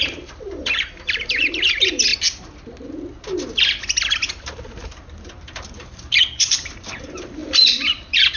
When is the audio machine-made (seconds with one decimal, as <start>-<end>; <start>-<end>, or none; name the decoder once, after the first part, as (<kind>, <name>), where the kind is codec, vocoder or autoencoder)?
0.0-2.1 (vocoder, BigVGAN v2); 4.5-8.4